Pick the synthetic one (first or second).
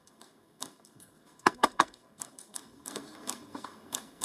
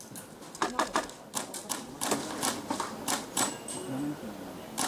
first